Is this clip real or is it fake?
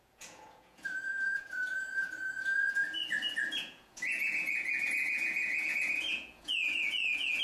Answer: fake